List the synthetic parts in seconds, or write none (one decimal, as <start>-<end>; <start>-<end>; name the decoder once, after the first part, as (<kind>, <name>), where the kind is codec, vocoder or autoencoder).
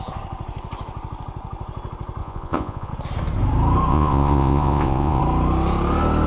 2.2-2.9 (vocoder, Vocos); 3.9-5.2